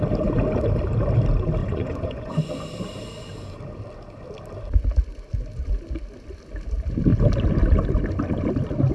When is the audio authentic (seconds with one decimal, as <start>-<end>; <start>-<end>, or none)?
0.0-1.6; 2.5-8.9